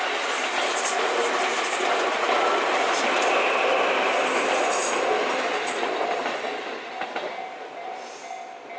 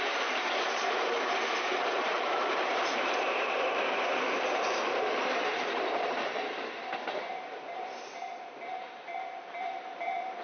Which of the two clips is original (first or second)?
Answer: first